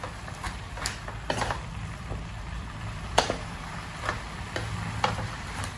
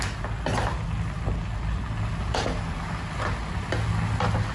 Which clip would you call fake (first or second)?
first